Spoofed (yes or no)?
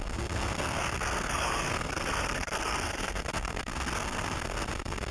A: yes